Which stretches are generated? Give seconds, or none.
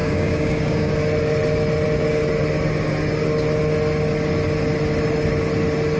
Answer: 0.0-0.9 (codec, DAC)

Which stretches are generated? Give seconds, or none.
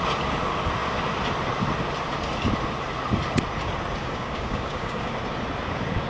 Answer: 4.0-5.1 (codec, DAC)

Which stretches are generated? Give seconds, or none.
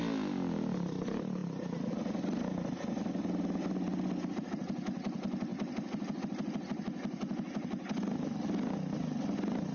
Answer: none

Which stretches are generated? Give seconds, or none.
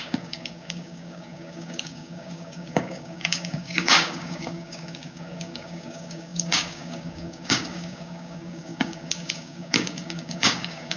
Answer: 0.0-11.0 (codec, DAC)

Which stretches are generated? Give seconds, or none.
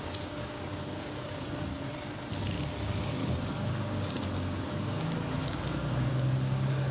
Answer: 0.0-1.7 (codec, DAC); 2.8-3.2; 3.7-6.9